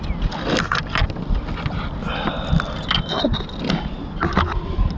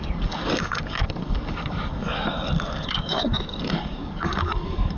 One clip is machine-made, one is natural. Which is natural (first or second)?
first